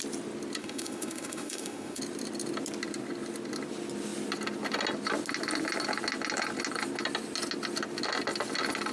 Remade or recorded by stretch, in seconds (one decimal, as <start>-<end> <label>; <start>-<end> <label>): 0.0-0.6 recorded; 0.6-2.0 remade; 2.0-8.9 recorded

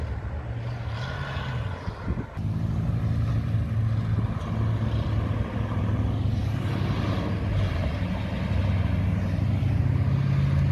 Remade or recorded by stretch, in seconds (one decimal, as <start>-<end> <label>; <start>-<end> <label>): 0.0-10.7 recorded